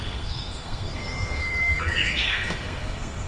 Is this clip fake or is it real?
fake